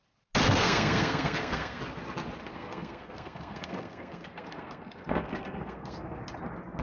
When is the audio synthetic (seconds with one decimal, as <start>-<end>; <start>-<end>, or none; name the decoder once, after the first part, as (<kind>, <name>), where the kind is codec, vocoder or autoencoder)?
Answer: 0.4-1.8 (codec, SNAC); 2.5-6.2